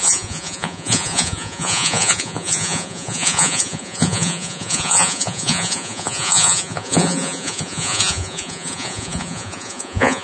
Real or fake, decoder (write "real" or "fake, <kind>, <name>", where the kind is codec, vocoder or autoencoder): fake, vocoder, Vocos